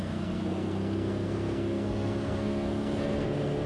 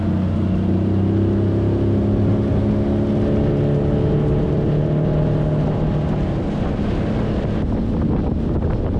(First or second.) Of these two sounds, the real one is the second